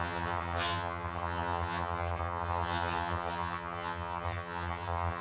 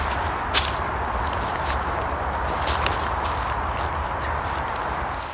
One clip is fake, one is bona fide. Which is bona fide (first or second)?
second